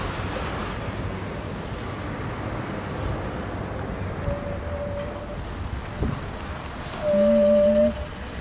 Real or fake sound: real